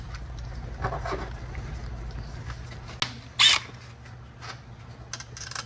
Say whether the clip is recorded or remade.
recorded